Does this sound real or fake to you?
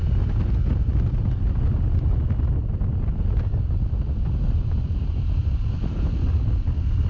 real